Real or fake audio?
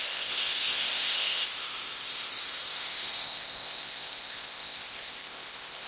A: fake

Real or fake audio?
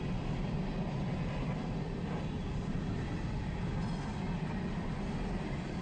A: real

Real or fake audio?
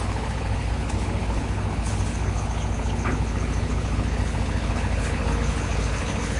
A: fake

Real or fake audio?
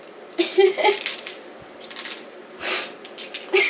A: real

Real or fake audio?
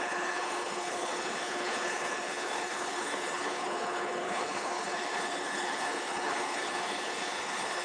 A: fake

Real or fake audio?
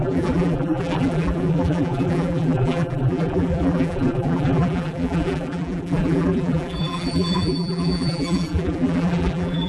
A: fake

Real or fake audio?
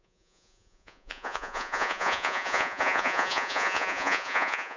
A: fake